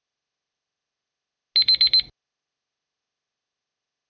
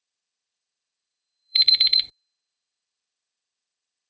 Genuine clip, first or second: first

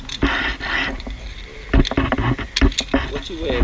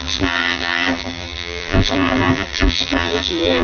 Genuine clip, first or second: first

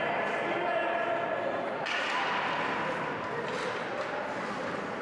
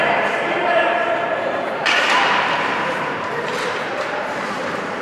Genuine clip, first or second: first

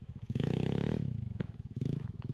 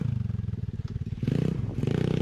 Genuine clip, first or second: second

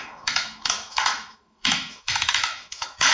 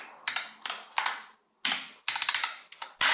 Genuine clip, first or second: second